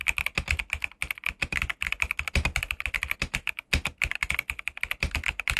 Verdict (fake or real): real